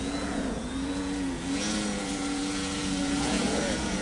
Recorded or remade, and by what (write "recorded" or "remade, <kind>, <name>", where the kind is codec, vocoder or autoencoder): remade, vocoder, Vocos